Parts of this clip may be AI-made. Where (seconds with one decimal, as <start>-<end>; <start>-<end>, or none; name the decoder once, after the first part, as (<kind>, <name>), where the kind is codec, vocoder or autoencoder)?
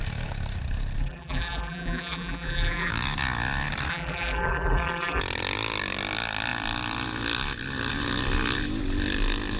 1.0-2.9 (vocoder, BigVGAN v2); 3.9-5.2